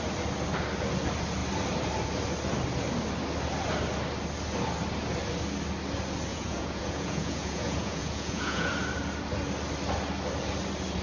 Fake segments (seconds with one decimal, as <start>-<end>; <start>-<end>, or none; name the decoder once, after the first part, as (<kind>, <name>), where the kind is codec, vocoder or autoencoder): 6.3-8.7 (vocoder, Vocos)